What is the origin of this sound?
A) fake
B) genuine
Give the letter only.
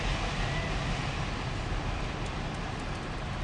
B